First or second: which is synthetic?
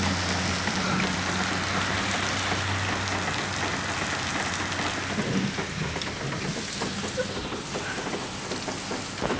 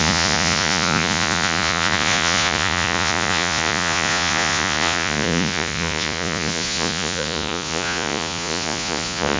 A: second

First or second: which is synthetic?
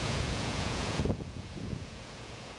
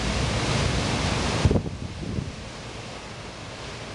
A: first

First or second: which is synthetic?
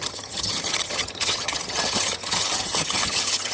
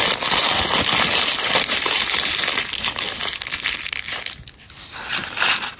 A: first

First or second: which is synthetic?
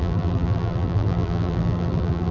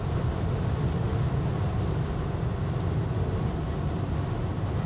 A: first